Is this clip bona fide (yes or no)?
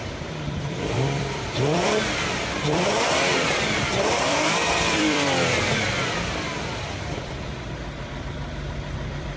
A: no